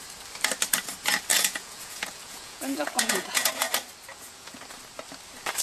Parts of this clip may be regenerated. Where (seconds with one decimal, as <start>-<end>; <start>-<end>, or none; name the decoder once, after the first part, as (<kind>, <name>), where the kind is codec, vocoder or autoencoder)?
1.3-3.5 (vocoder, Vocos); 4.1-4.6

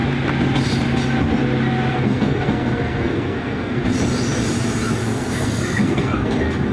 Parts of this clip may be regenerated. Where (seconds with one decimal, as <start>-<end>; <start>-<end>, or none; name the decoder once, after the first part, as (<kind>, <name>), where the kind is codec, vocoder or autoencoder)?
1.9-3.8 (codec, SNAC); 5.0-6.7

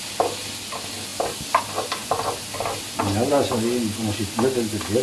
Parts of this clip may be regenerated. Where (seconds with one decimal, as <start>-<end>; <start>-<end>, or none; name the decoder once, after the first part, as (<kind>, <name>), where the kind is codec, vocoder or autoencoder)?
none

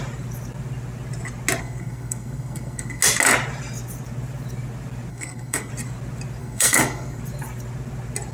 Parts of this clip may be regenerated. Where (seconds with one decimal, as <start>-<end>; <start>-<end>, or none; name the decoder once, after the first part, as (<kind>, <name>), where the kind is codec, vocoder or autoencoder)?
1.6-3.0 (codec, SNAC); 5.1-5.7; 6.4-7.2

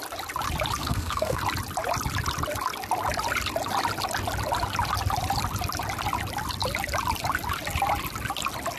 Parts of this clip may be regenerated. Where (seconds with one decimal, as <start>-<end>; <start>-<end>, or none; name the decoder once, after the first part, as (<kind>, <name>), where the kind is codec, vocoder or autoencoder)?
0.8-1.4 (codec, SNAC)

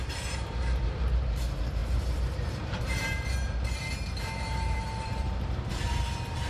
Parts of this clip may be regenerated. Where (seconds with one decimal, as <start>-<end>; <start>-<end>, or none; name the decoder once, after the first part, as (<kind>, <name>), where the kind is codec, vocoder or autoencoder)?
0.0-6.5 (vocoder, BigVGAN v2)

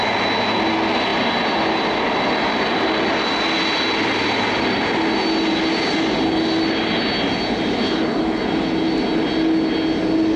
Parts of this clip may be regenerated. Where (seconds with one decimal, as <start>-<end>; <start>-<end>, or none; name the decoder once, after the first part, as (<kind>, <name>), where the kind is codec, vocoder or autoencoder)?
none